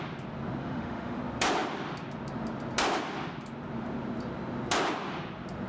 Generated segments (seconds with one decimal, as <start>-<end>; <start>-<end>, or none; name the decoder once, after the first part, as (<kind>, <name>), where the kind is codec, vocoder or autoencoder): 0.6-1.2 (autoencoder, DAC-VAE)